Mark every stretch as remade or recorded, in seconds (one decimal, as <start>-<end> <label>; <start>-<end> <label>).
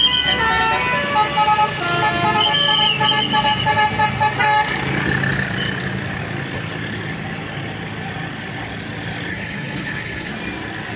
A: 0.0-9.3 recorded; 9.3-10.3 remade; 10.3-11.0 recorded